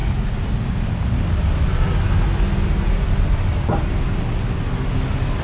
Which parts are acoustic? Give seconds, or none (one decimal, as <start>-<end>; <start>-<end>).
0.0-3.5; 4.2-5.4